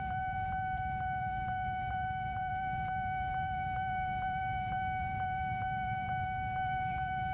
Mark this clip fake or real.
fake